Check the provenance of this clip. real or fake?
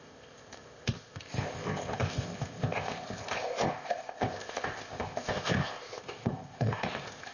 fake